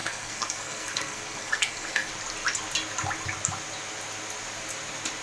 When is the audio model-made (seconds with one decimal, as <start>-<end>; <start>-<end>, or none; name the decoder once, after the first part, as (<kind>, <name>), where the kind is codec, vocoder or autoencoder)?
0.0-2.1 (codec, SNAC)